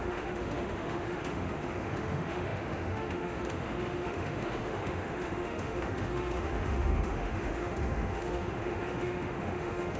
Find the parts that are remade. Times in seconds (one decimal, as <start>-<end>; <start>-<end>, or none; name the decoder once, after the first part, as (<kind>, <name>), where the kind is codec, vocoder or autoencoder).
0.0-10.0 (autoencoder, DAC-VAE)